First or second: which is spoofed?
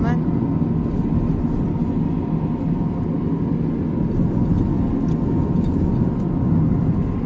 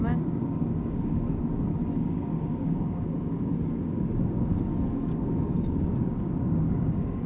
second